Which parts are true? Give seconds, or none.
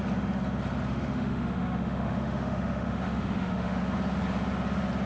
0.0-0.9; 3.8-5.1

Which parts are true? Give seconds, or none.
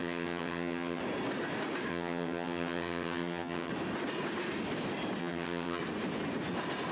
1.0-1.9; 3.7-5.2; 5.8-6.9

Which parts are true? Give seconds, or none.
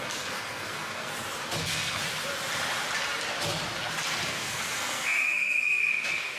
1.1-1.6; 2.0-4.3